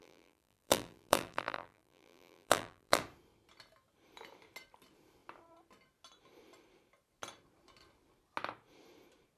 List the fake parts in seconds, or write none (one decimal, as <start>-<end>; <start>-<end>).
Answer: 0.0-3.0